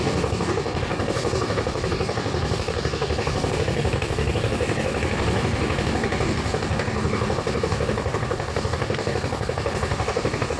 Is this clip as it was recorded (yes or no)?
no